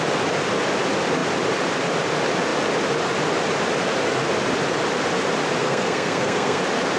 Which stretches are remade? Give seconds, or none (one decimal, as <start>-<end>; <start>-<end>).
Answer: 5.6-6.6